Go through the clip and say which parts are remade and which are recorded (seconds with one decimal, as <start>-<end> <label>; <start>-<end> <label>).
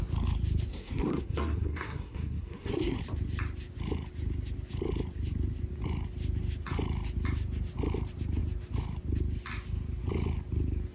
0.0-0.7 recorded; 0.7-3.0 remade; 3.0-10.9 recorded